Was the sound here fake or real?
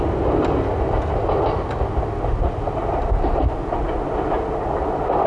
real